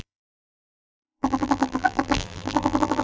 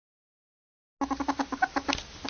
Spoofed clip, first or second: first